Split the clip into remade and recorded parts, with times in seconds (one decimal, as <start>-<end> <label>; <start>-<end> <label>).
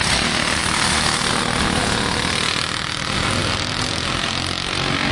0.0-0.6 recorded; 0.6-1.3 remade; 1.3-5.1 recorded